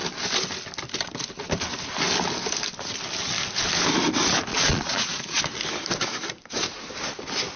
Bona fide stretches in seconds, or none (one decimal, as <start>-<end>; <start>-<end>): 0.0-4.5; 5.4-7.6